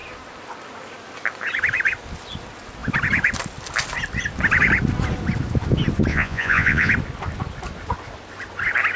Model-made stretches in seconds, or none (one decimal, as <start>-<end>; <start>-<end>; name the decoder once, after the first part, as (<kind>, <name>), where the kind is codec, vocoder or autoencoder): 6.1-6.9 (vocoder, Vocos)

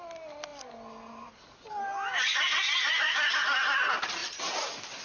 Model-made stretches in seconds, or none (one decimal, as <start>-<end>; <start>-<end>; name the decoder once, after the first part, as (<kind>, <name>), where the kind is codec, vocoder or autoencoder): none

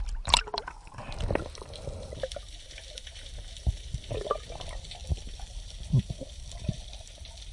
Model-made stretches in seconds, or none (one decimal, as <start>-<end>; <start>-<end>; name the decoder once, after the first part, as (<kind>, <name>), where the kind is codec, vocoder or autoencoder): none

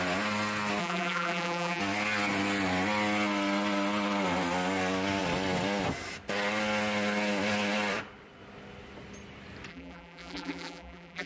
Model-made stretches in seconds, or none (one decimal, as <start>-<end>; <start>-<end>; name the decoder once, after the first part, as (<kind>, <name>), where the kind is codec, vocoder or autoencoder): 0.8-1.8 (vocoder, BigVGAN v2); 9.7-11.3

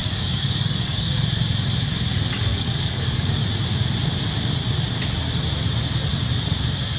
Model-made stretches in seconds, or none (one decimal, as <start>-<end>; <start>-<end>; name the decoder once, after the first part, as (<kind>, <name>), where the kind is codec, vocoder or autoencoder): 0.0-1.1 (codec, DAC); 2.5-3.4

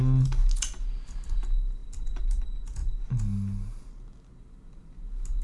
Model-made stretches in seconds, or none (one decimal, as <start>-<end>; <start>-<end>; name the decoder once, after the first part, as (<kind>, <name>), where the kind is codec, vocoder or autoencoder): none

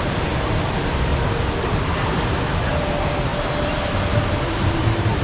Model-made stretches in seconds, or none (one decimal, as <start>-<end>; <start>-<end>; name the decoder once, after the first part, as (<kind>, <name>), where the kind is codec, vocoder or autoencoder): 0.0-1.1 (vocoder, BigVGAN v2); 1.6-3.3; 4.3-5.2